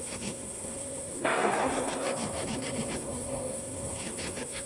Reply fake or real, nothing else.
fake